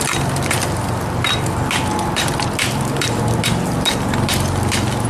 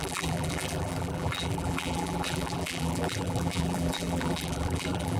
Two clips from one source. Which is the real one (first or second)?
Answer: first